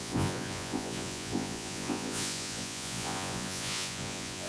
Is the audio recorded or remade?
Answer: remade